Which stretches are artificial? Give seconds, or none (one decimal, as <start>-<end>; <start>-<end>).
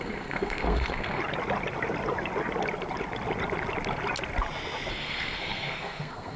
0.0-1.2; 4.9-6.4